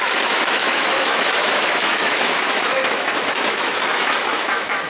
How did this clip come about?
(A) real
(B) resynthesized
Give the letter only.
B